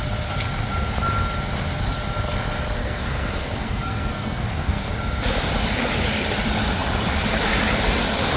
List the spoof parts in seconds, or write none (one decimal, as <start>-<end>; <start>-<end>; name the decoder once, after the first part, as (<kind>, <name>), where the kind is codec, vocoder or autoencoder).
2.8-4.9 (codec, SNAC)